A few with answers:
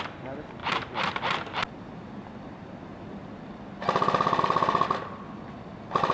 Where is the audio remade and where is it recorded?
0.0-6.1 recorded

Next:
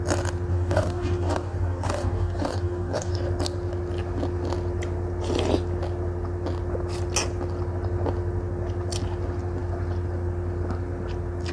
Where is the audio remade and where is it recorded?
0.0-0.5 recorded; 0.5-3.1 remade; 3.1-11.5 recorded

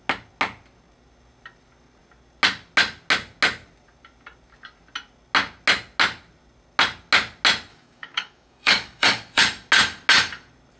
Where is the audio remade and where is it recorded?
0.0-7.7 recorded; 7.7-9.4 remade; 9.4-10.8 recorded